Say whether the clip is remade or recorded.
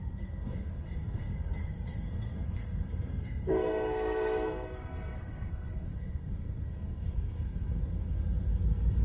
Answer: remade